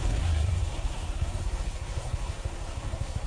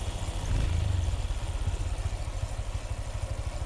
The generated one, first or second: first